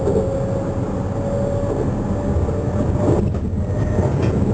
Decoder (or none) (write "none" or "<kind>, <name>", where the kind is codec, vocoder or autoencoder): none